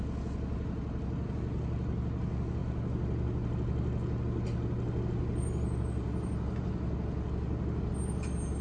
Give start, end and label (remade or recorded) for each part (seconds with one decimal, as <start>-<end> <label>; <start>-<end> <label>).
0.0-8.6 recorded